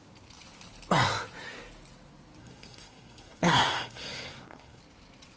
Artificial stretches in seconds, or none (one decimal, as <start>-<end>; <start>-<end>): 2.4-4.8